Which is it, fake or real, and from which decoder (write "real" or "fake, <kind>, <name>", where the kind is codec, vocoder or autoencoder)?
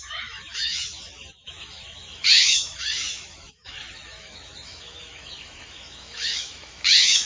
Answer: fake, autoencoder, DAC-VAE